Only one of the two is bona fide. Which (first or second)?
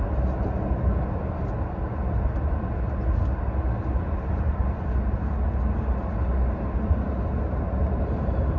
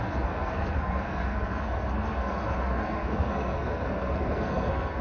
first